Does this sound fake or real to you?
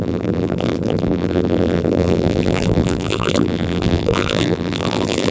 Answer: fake